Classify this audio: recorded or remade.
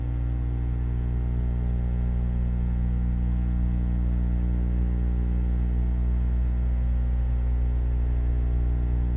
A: recorded